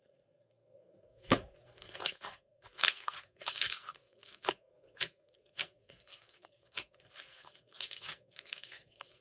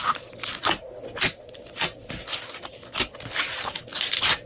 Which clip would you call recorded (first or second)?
second